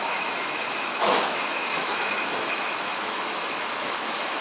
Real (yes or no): no